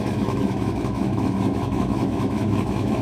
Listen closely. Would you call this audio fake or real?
fake